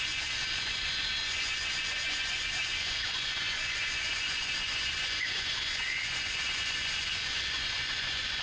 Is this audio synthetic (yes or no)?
yes